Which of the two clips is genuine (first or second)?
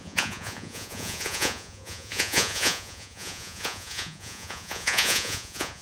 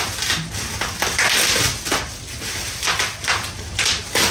second